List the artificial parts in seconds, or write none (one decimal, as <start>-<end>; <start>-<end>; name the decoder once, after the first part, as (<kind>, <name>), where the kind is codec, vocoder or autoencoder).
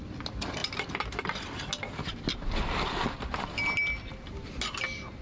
none